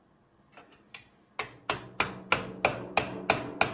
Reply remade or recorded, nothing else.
recorded